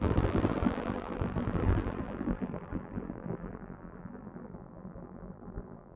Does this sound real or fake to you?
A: fake